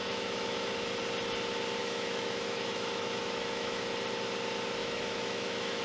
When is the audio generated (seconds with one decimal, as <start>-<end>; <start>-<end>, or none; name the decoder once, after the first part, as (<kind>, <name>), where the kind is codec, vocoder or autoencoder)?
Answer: 0.0-0.7 (autoencoder, DAC-VAE); 1.8-3.8; 4.8-5.8